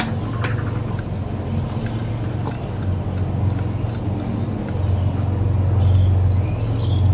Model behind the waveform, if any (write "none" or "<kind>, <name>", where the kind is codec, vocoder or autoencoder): none